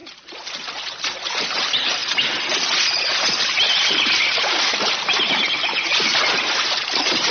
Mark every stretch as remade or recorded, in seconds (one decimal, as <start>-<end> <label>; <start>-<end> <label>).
0.0-1.3 recorded; 1.3-2.0 remade; 2.0-2.9 recorded; 2.9-7.3 remade